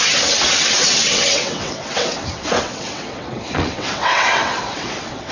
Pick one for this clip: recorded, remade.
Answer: remade